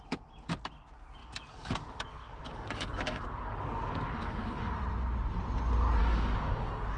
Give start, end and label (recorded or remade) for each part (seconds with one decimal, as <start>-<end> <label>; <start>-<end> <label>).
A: 0.0-1.2 recorded; 1.2-4.7 remade; 4.7-6.0 recorded; 6.0-7.0 remade